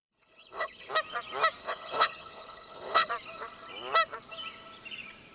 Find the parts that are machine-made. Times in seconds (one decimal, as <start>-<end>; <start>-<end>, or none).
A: 0.0-0.9; 1.6-3.1